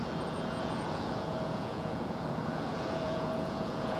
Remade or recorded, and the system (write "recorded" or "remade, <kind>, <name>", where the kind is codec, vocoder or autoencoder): remade, vocoder, Vocos